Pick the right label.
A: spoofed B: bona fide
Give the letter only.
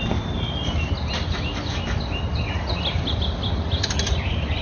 B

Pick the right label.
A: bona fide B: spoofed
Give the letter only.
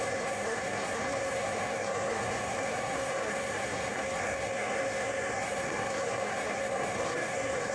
B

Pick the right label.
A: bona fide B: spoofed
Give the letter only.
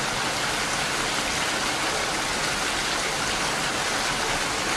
A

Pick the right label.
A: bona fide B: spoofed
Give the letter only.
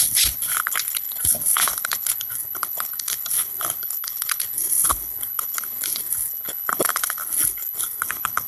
B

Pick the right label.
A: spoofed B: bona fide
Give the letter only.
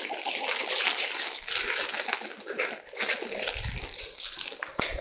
B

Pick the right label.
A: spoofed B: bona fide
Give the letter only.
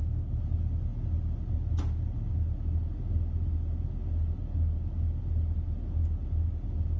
B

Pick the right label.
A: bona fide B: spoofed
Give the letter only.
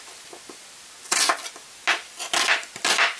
A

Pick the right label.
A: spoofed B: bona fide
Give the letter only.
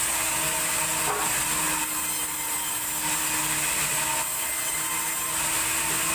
B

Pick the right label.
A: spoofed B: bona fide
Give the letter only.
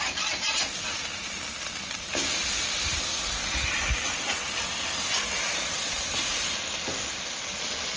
B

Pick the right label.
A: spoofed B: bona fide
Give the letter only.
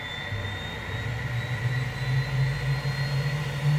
B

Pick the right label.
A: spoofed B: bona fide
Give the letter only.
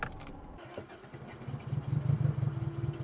B